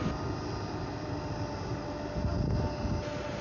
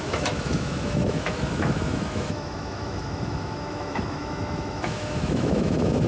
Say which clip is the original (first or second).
first